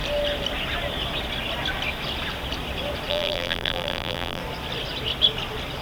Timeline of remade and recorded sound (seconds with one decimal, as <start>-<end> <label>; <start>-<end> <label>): 0.0-3.1 recorded; 3.1-4.4 remade; 4.4-5.8 recorded